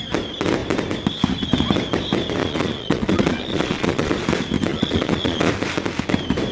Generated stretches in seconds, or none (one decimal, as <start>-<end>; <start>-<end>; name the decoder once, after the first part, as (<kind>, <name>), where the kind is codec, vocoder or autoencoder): 2.4-4.1 (vocoder, Vocos); 4.7-5.5